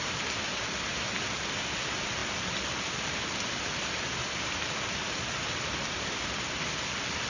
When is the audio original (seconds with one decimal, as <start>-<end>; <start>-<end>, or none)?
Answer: 0.0-7.3